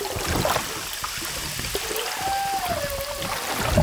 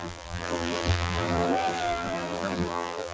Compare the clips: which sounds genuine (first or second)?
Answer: first